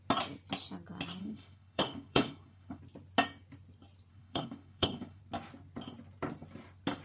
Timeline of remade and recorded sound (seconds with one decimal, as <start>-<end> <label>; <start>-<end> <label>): 0.0-1.2 recorded; 1.2-2.8 remade; 2.8-4.1 recorded; 4.1-5.2 remade; 5.2-7.0 recorded